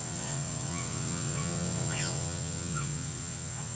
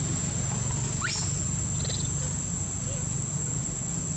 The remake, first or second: first